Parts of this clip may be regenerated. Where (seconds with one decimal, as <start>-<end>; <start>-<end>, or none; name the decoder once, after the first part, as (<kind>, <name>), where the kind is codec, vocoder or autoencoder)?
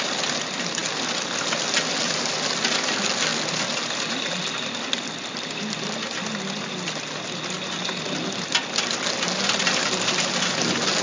none